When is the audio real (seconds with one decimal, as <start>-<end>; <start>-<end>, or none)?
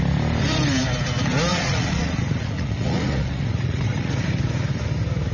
0.0-1.5; 4.1-5.3